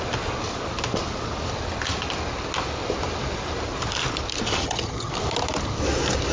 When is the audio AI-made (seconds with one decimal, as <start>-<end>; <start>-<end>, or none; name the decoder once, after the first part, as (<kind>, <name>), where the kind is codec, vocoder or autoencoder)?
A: 4.6-5.1 (vocoder, HiFi-GAN)